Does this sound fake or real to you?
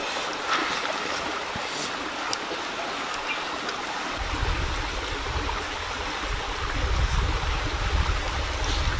real